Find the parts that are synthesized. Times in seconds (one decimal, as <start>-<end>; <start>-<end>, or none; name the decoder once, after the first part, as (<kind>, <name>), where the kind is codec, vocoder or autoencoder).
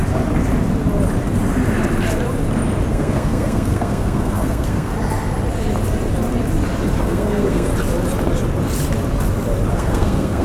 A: 2.9-4.9 (codec, SNAC); 7.0-7.7; 9.7-10.4